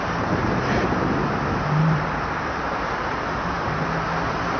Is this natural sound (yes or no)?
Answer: no